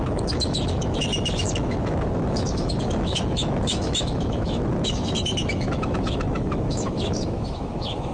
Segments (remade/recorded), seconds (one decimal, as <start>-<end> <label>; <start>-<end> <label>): 0.0-8.1 remade